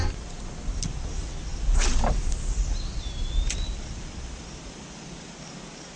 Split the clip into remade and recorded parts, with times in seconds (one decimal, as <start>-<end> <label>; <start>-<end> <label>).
0.0-1.5 recorded; 1.5-5.1 remade; 5.1-6.0 recorded

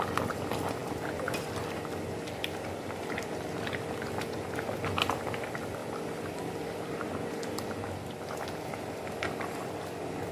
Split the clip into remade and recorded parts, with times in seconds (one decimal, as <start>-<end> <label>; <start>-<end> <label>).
0.0-10.3 remade

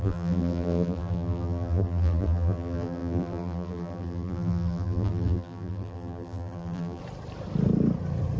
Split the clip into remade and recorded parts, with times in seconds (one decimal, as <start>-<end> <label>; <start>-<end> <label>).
0.0-7.0 remade; 7.0-8.4 recorded

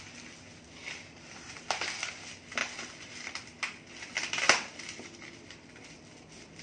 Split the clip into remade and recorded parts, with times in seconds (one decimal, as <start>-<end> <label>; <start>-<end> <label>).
0.0-0.8 recorded; 0.8-1.7 remade; 1.7-2.6 recorded; 2.6-6.6 remade

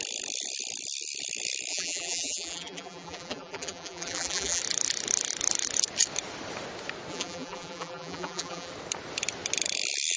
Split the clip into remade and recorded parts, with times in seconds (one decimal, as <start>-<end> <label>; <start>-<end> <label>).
0.0-1.7 recorded; 1.7-4.6 remade; 4.6-7.1 recorded; 7.1-8.7 remade; 8.7-10.2 recorded

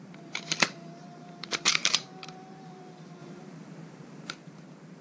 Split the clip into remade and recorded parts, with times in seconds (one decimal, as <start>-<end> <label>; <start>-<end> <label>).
0.0-5.0 remade

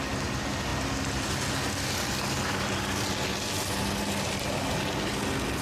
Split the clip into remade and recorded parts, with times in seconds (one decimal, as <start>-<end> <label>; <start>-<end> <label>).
0.0-5.6 recorded

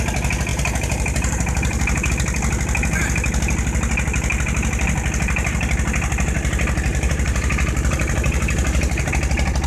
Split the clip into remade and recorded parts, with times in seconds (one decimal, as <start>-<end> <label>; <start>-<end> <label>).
0.0-0.5 recorded; 0.5-2.1 remade; 2.1-6.9 recorded; 6.9-9.1 remade; 9.1-9.7 recorded